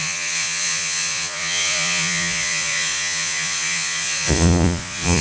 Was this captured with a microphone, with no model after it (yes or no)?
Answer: no